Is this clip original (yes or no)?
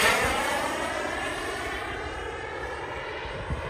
no